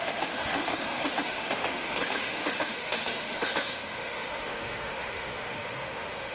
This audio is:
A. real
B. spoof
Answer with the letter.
B